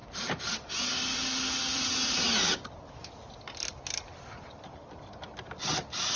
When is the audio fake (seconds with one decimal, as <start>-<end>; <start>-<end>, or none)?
none